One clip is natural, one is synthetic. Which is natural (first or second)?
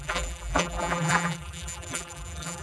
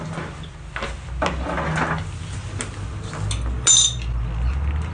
second